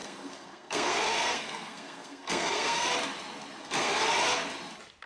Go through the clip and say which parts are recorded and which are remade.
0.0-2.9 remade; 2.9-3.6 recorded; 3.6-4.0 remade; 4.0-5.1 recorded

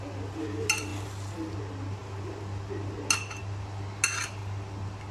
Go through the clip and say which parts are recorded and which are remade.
0.0-5.1 recorded

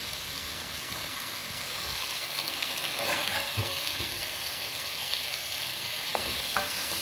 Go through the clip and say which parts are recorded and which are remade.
0.0-7.0 remade

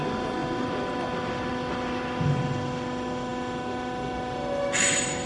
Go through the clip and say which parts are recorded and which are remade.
0.0-5.3 recorded

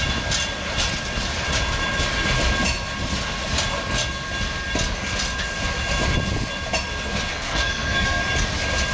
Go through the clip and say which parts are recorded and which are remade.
0.0-7.3 recorded; 7.3-8.2 remade; 8.2-8.9 recorded

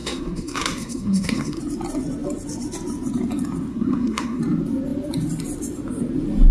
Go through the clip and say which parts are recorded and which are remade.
0.0-1.6 remade; 1.6-3.7 recorded; 3.7-4.4 remade; 4.4-6.5 recorded

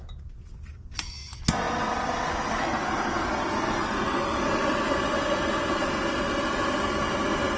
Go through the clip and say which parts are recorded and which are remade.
0.0-7.6 recorded